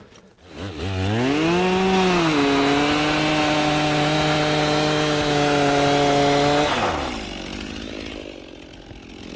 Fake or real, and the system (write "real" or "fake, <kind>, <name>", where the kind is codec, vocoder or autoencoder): real